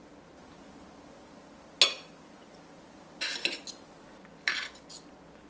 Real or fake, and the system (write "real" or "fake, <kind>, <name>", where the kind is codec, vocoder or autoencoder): real